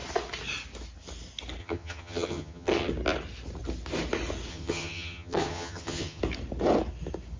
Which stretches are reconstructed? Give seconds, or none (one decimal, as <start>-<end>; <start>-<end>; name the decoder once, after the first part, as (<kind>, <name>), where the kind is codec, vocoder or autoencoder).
1.6-2.9 (vocoder, HiFi-GAN); 4.5-6.2